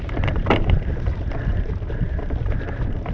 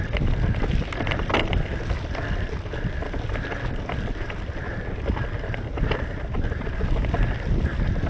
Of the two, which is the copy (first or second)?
first